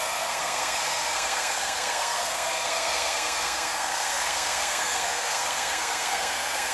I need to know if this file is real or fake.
fake